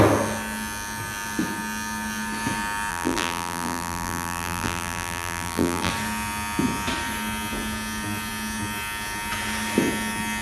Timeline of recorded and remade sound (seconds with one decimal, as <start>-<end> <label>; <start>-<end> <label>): 0.0-2.9 recorded; 2.9-5.9 remade; 5.9-10.4 recorded